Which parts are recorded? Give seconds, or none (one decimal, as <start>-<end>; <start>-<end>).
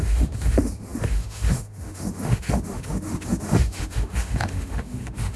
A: none